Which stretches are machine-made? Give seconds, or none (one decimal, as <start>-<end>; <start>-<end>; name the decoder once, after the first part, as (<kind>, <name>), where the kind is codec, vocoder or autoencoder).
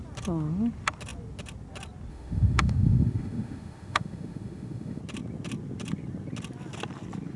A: 2.1-5.0 (autoencoder, DAC-VAE)